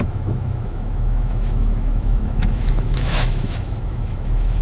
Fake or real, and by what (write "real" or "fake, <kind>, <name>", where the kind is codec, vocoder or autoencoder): fake, autoencoder, DAC-VAE